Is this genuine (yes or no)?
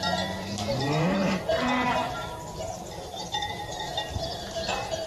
no